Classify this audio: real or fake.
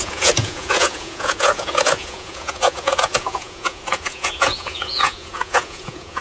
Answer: fake